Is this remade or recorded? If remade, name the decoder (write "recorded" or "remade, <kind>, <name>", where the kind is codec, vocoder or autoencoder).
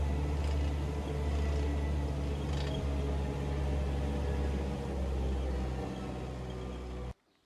recorded